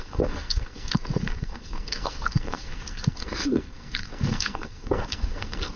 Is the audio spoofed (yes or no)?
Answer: yes